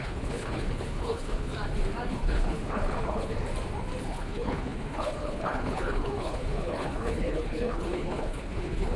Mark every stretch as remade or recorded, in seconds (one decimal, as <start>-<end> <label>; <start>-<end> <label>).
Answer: 0.0-1.5 remade; 1.5-2.1 recorded; 2.1-3.3 remade; 3.3-4.0 recorded; 4.0-9.0 remade